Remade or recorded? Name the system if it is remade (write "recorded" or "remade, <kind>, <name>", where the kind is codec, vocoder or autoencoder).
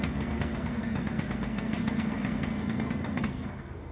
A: remade, codec, SNAC